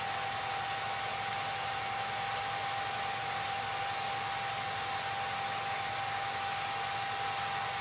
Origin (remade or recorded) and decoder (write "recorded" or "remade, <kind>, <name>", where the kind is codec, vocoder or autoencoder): recorded